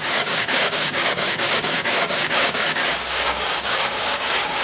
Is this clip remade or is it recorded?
remade